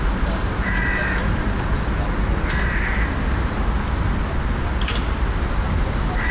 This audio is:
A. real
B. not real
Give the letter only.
A